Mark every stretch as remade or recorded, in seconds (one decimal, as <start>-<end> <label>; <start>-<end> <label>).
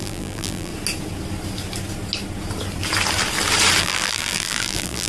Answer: 0.0-0.7 remade; 0.7-3.8 recorded; 3.8-5.1 remade